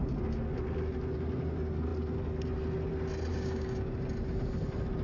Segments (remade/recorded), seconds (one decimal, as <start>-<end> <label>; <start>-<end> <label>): 0.0-3.3 recorded; 3.3-3.9 remade; 3.9-5.0 recorded